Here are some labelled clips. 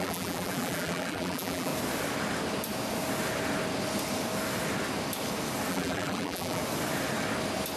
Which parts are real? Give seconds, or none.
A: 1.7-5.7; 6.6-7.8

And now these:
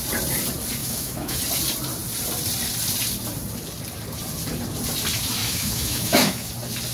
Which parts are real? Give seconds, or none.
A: 0.0-0.8; 1.4-5.4; 6.5-6.9

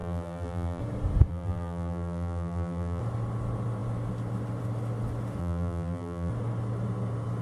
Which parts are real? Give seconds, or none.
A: 0.8-1.3; 3.0-5.4; 6.3-7.4

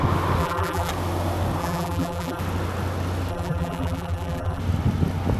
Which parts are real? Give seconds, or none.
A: 0.0-0.4; 0.9-1.6; 2.4-3.3; 4.6-5.4

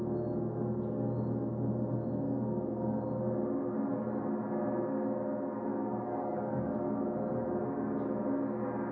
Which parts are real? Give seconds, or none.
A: 0.0-5.7; 6.7-8.9

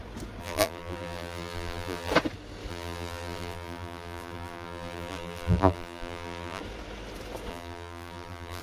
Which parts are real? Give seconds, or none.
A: 0.0-0.4; 2.1-2.7; 6.6-7.5

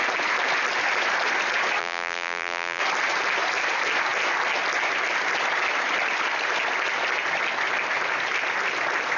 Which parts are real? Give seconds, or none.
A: 0.0-1.8; 2.8-9.2

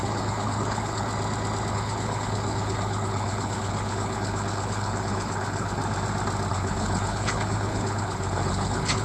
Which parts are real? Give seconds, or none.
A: 1.1-1.7; 5.8-6.5